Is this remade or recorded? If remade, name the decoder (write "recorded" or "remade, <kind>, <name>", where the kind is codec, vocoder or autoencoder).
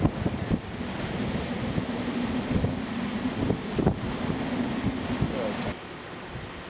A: recorded